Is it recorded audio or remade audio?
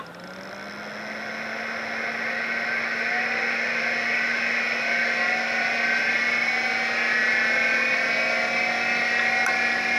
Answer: recorded